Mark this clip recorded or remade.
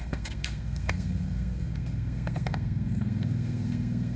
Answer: remade